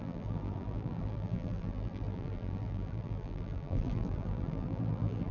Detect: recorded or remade remade